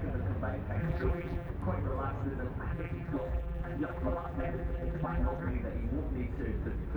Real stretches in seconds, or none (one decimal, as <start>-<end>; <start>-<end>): 0.0-0.8; 1.5-2.7; 5.5-7.0